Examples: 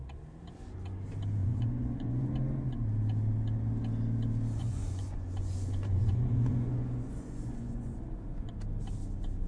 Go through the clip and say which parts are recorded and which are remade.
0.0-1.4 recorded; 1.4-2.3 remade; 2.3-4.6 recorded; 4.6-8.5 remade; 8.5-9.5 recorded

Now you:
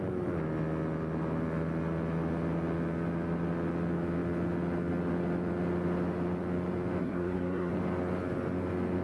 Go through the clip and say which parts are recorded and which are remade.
0.0-7.0 recorded; 7.0-7.7 remade; 7.7-9.0 recorded

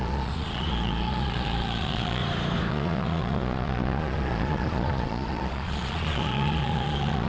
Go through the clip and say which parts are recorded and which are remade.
0.0-2.2 remade; 2.2-2.7 recorded; 2.7-7.3 remade

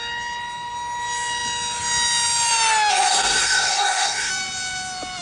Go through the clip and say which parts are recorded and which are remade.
0.0-2.9 recorded; 2.9-4.3 remade; 4.3-5.2 recorded